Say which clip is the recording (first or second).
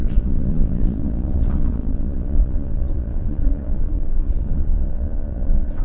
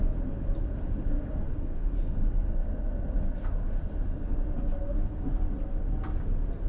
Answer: second